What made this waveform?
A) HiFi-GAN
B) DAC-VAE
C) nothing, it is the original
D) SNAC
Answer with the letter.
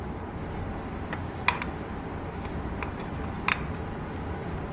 C